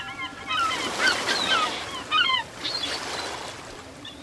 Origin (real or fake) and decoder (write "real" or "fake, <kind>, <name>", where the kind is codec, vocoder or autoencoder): real